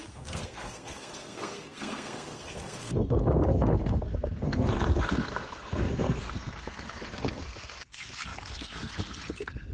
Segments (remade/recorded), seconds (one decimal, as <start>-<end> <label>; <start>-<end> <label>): 0.0-9.7 remade